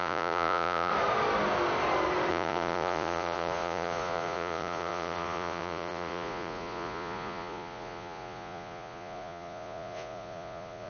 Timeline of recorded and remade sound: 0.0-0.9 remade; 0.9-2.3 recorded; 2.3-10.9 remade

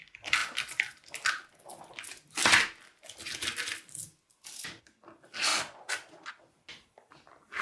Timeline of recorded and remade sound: 0.0-7.6 recorded

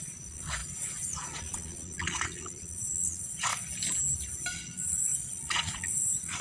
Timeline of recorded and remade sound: 0.0-3.5 remade; 3.5-4.5 recorded; 4.5-6.4 remade

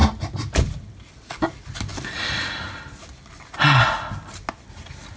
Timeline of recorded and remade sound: 0.0-5.2 recorded

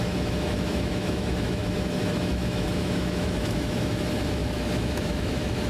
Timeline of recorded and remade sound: 0.0-5.7 remade

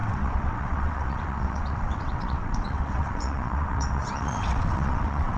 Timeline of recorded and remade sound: 0.0-5.4 remade

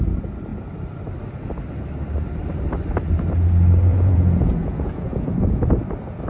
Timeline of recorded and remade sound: 0.0-3.9 recorded; 3.9-5.3 remade; 5.3-6.3 recorded

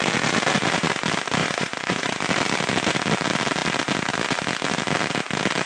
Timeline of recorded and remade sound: 0.0-1.4 recorded; 1.4-2.2 remade; 2.2-5.7 recorded